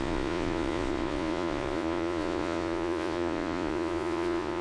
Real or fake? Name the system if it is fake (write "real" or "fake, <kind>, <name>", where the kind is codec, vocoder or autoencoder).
fake, vocoder, Vocos